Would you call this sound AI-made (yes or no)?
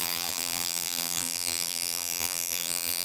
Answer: yes